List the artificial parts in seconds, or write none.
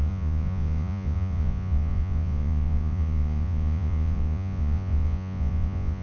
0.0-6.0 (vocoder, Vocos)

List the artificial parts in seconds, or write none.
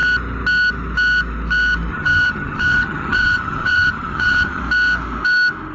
1.9-4.6 (vocoder, HiFi-GAN)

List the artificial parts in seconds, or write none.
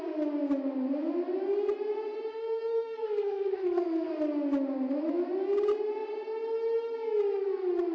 2.3-4.1 (codec, SNAC)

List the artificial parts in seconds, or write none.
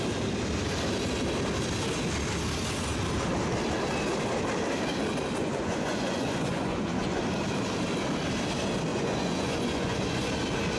5.4-7.2 (vocoder, Vocos); 8.9-10.3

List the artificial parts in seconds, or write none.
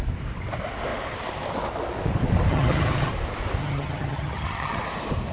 2.5-3.1 (vocoder, HiFi-GAN); 3.6-4.8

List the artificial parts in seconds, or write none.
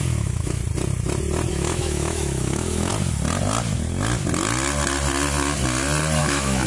0.0-0.6 (autoencoder, DAC-VAE); 1.5-2.9; 6.2-6.7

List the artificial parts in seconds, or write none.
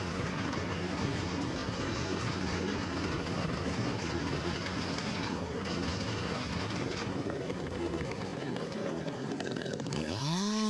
0.0-10.7 (codec, SNAC)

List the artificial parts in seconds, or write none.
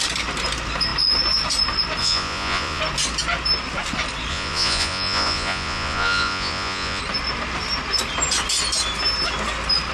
2.0-2.8 (vocoder, Vocos); 4.3-7.0